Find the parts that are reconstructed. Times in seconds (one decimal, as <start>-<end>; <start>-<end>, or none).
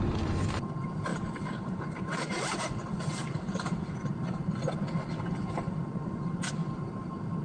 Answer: 1.1-3.9